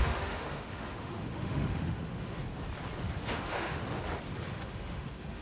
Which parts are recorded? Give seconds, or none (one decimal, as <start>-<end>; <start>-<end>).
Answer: 2.4-3.2; 3.8-4.5